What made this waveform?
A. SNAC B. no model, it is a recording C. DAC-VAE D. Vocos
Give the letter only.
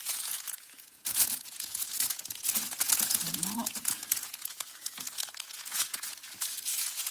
D